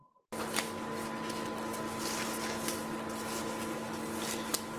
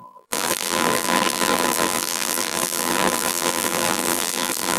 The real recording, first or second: first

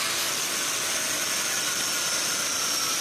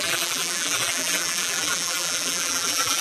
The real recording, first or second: first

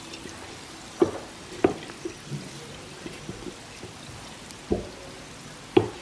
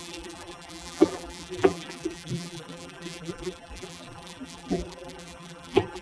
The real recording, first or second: first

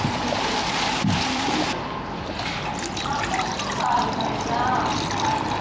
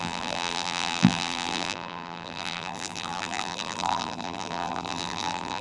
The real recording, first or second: first